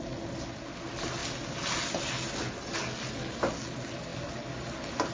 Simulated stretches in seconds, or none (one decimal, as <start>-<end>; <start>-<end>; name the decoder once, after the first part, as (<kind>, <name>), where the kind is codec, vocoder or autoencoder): none